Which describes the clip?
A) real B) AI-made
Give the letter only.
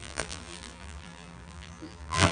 B